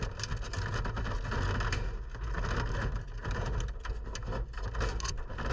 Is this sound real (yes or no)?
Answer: yes